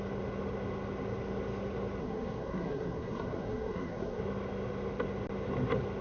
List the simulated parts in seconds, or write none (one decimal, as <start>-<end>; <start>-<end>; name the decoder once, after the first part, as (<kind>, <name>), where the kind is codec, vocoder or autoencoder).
2.0-4.2 (codec, SNAC)